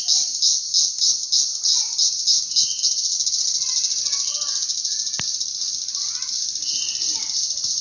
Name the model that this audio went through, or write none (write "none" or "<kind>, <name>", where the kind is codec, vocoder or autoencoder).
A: none